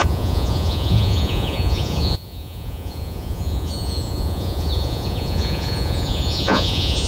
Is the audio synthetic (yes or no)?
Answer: yes